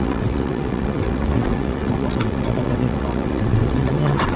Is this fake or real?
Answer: fake